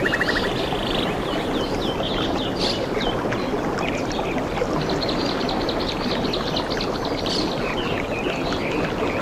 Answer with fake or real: real